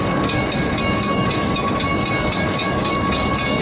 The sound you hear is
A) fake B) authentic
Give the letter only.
A